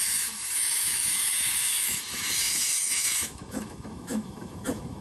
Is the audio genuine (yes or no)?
no